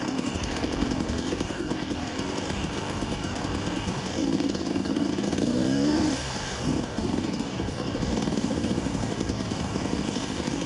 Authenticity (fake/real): fake